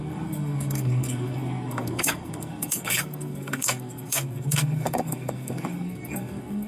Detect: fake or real fake